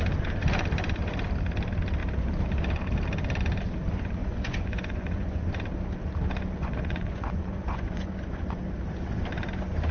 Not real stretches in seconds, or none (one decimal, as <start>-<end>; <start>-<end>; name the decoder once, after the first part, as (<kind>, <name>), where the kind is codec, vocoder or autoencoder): 4.2-5.5 (vocoder, Vocos); 6.6-8.6